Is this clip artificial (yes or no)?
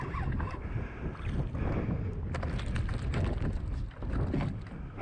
no